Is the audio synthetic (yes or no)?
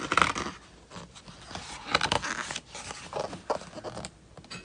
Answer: no